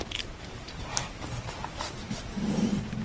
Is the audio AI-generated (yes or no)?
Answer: yes